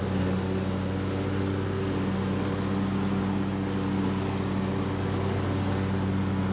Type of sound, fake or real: real